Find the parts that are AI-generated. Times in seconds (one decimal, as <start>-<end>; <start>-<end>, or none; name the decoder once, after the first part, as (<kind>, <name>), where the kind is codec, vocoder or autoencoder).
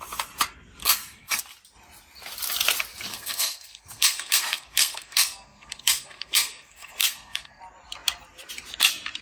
0.8-1.4 (codec, SNAC); 3.1-7.6